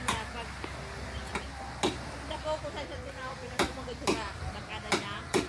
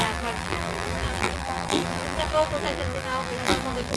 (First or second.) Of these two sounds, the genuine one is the first